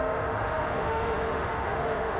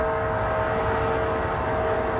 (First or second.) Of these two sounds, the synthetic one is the first